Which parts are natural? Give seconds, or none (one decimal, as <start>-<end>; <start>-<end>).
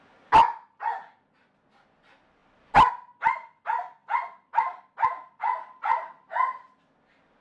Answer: 0.0-7.4